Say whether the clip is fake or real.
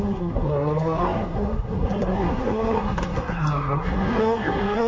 fake